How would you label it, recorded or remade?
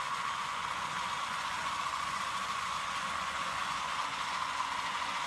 remade